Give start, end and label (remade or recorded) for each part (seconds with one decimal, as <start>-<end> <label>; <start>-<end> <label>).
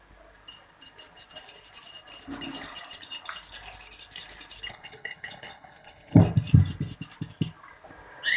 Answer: 0.0-4.7 recorded; 4.7-6.2 remade; 6.2-8.4 recorded